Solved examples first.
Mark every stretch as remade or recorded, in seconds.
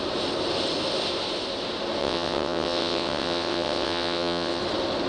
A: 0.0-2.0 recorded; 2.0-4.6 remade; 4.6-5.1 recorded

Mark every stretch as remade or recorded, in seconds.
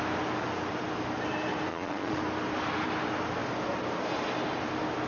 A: 0.0-1.7 recorded; 1.7-2.2 remade; 2.2-5.1 recorded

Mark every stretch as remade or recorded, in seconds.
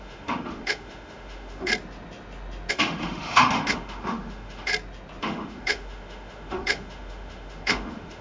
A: 0.0-1.7 remade; 1.7-2.7 recorded; 2.7-4.7 remade; 4.7-5.2 recorded; 5.2-8.2 remade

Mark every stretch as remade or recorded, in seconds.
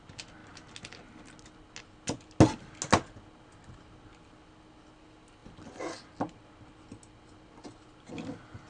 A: 0.0-8.7 recorded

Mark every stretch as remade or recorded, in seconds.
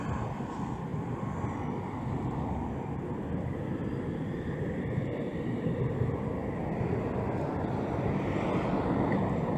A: 0.0-5.3 recorded; 5.3-5.9 remade; 5.9-9.6 recorded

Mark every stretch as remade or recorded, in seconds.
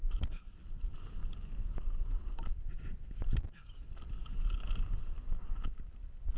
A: 0.0-6.4 remade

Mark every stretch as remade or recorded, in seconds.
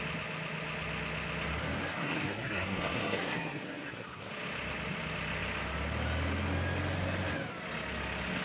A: 0.0-1.9 recorded; 1.9-4.3 remade; 4.3-8.4 recorded